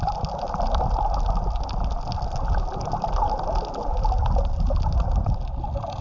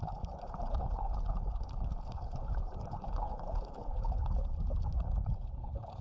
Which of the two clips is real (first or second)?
first